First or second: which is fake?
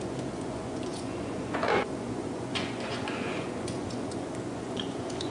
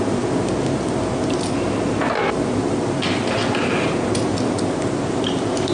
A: first